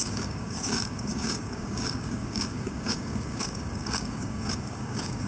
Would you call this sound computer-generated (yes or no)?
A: yes